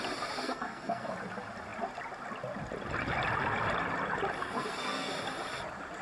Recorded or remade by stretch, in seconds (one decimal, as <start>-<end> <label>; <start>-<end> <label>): 0.0-0.4 recorded; 0.4-1.1 remade; 1.1-4.4 recorded; 4.4-5.1 remade; 5.1-6.0 recorded